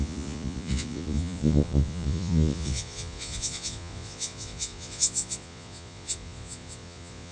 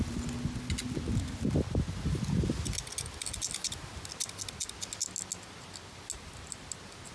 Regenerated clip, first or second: first